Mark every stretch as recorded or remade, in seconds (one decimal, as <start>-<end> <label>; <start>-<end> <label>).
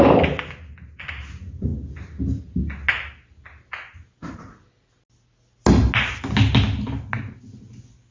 0.0-8.1 recorded